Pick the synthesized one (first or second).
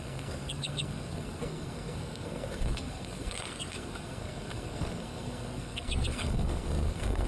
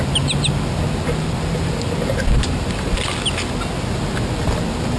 first